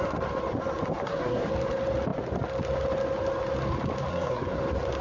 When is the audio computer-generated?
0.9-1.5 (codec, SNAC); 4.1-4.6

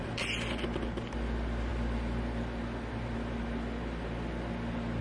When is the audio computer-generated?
none